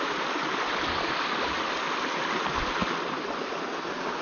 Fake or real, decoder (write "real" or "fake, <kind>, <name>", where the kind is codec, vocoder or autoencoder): real